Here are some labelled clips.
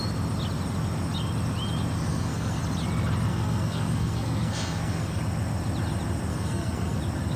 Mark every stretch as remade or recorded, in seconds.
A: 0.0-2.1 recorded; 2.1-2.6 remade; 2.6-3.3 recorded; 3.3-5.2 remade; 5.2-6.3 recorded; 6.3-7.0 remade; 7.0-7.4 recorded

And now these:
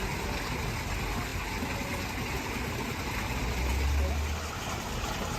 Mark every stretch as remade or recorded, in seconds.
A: 0.0-5.4 recorded

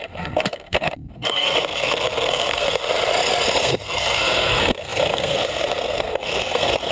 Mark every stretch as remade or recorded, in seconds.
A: 0.0-2.8 remade; 2.8-3.6 recorded; 3.6-6.9 remade

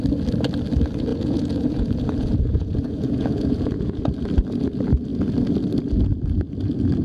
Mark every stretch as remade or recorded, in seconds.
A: 0.0-1.1 recorded; 1.1-4.0 remade; 4.0-7.0 recorded

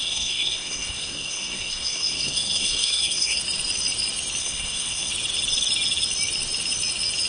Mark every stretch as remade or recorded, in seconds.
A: 0.0-3.4 remade; 3.4-4.4 recorded; 4.4-5.1 remade; 5.1-7.3 recorded

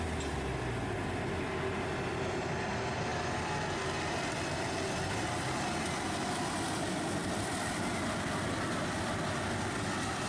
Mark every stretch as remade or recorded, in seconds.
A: 0.0-10.3 recorded

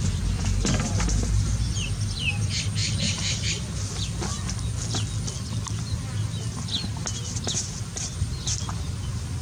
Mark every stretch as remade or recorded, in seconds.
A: 0.0-2.8 recorded; 2.8-3.5 remade; 3.5-9.4 recorded

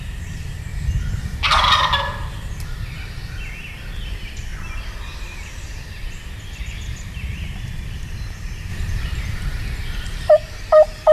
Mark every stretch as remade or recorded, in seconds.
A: 0.0-0.7 remade; 0.7-4.1 recorded; 4.1-4.5 remade; 4.5-6.6 recorded; 6.6-11.1 remade